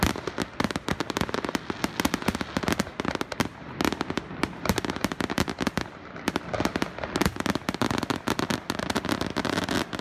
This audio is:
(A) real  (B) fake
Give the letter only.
A